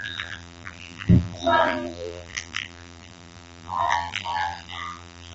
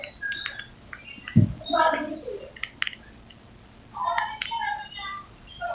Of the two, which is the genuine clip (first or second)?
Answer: second